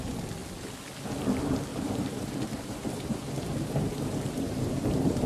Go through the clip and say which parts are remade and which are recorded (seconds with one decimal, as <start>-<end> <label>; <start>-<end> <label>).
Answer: 0.0-1.7 recorded; 1.7-5.3 remade

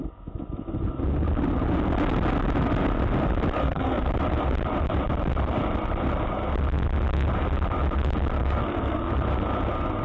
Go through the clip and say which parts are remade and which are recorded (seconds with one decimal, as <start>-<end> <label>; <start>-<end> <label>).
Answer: 0.0-3.6 recorded; 3.6-4.1 remade; 4.1-8.4 recorded; 8.4-9.1 remade; 9.1-10.0 recorded